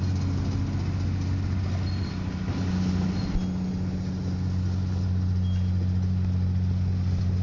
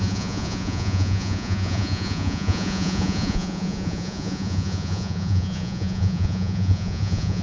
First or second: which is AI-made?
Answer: second